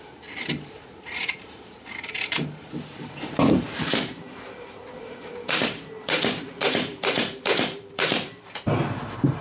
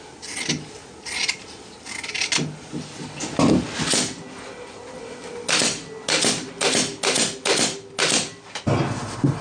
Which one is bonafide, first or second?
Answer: second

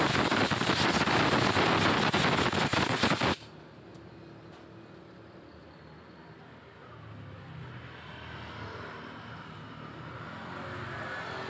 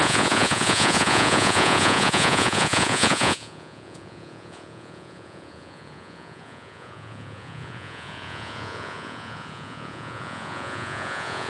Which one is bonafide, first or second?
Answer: first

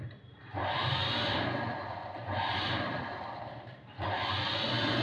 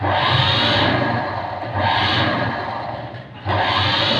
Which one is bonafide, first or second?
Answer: second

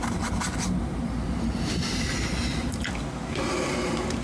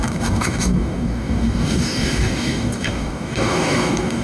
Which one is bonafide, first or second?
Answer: first